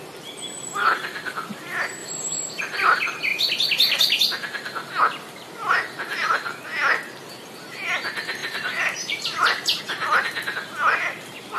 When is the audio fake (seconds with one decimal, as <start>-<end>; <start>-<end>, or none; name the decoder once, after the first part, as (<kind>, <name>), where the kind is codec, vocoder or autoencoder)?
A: 2.0-2.6 (vocoder, BigVGAN v2); 8.4-9.8